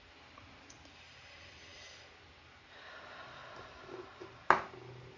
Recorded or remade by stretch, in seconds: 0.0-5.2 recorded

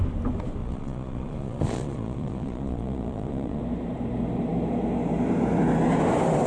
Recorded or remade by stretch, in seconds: 0.0-0.6 recorded; 0.6-3.6 remade; 3.6-6.5 recorded

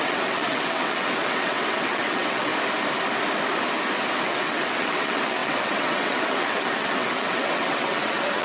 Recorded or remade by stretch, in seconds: 0.0-2.5 remade; 2.5-4.2 recorded; 4.2-8.4 remade

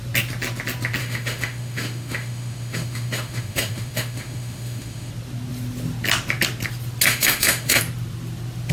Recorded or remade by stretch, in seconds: 0.0-1.0 recorded; 1.0-5.1 remade; 5.1-7.1 recorded; 7.1-7.8 remade; 7.8-8.7 recorded